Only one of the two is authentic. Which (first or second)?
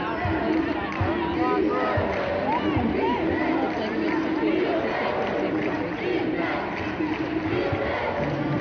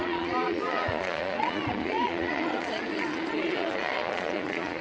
first